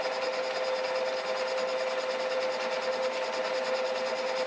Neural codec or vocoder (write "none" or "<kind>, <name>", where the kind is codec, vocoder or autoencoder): none